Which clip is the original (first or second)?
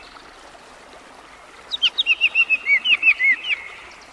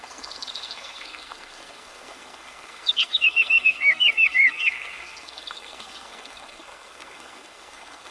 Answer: first